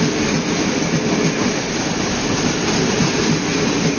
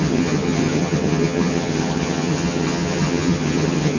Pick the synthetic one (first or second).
second